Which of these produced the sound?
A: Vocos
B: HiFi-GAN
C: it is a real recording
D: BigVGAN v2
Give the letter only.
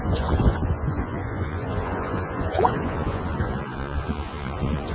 A